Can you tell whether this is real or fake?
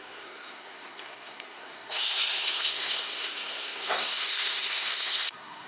fake